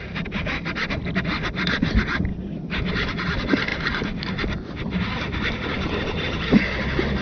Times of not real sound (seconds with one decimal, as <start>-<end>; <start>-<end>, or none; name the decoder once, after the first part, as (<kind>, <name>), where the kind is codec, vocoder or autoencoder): none